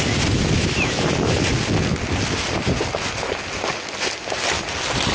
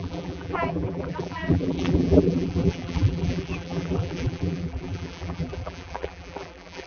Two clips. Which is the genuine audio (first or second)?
first